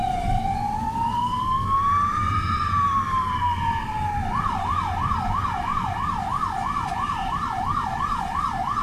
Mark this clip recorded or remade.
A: remade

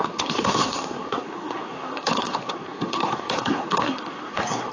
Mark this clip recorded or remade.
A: remade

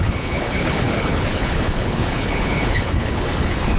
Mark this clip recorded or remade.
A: remade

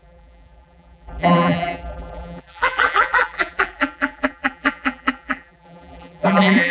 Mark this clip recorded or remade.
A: remade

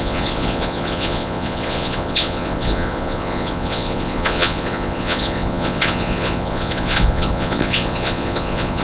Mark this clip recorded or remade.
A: remade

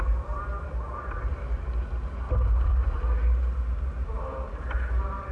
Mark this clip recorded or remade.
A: recorded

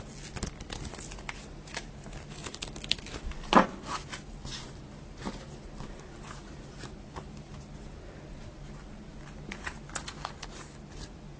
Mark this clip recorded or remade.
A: recorded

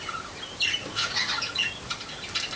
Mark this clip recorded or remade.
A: recorded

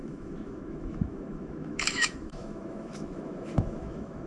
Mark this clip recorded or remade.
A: remade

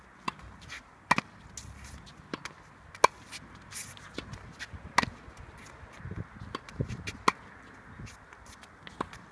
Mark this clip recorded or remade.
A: recorded